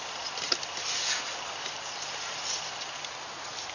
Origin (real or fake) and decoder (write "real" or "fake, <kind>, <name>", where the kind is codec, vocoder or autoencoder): real